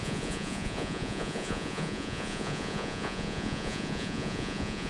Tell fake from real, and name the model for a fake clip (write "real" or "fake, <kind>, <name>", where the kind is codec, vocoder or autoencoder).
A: fake, vocoder, Vocos